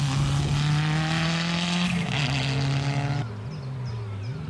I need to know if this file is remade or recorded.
recorded